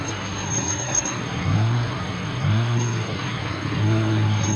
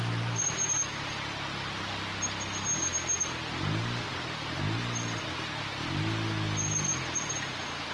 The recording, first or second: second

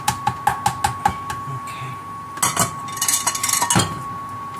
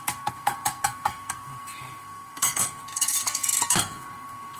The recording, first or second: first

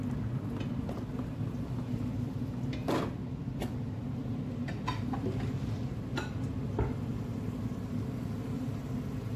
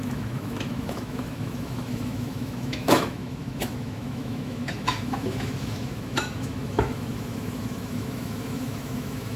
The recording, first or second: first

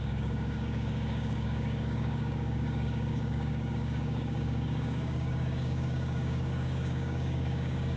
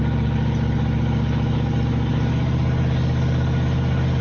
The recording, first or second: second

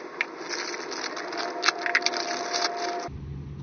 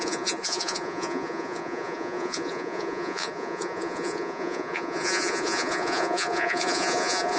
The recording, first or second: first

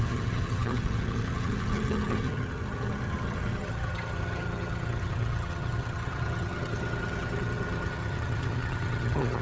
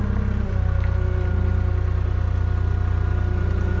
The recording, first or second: second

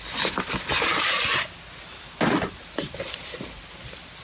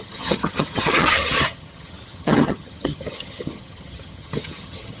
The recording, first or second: first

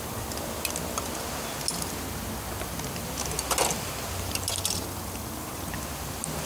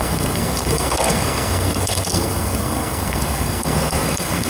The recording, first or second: first